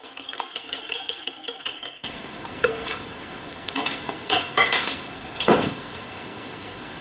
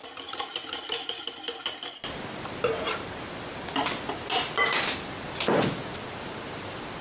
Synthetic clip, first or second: first